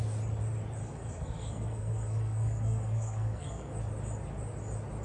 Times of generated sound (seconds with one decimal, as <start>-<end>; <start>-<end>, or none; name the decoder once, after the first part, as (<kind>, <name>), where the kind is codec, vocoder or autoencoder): 0.8-3.8 (codec, SNAC)